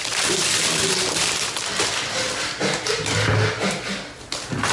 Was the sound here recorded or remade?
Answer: recorded